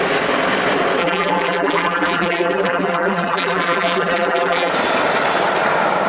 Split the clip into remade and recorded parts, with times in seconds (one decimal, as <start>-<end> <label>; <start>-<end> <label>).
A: 0.0-1.0 recorded; 1.0-4.7 remade; 4.7-6.1 recorded